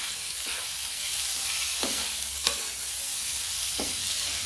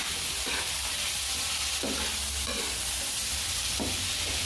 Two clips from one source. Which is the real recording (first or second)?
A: second